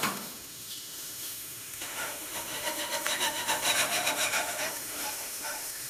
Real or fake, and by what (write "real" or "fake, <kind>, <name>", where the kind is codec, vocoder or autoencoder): fake, autoencoder, DAC-VAE